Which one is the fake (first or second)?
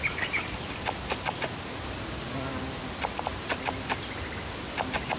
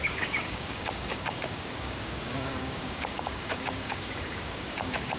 second